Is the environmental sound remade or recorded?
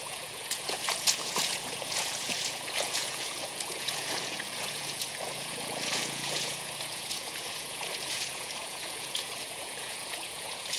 remade